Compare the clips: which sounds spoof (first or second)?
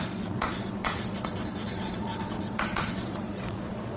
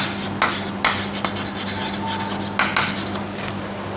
first